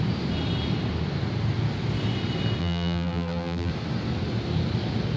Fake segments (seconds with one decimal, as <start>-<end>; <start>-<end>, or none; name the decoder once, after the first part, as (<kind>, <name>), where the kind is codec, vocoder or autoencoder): 2.6-3.7 (vocoder, BigVGAN v2)